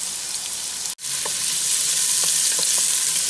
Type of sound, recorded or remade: recorded